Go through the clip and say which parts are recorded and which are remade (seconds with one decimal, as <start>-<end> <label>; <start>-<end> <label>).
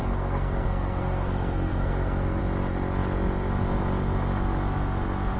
0.0-2.4 remade; 2.4-5.4 recorded